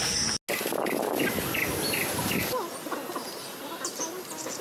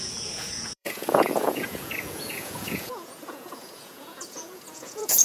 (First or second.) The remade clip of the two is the second